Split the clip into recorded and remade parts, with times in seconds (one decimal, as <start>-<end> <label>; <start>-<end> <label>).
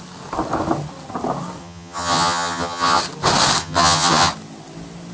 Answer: 0.0-1.6 recorded; 1.6-3.0 remade; 3.0-3.6 recorded; 3.6-4.3 remade; 4.3-5.1 recorded